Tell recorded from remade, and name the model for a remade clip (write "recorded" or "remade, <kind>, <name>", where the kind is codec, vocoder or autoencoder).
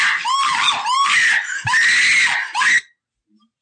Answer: recorded